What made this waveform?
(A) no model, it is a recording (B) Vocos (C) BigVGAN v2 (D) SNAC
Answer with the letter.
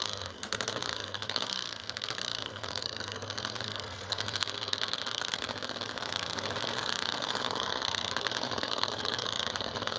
D